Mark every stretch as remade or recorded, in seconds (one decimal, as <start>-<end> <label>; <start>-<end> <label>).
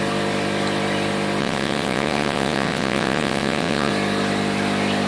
0.0-1.4 recorded; 1.4-3.9 remade; 3.9-5.1 recorded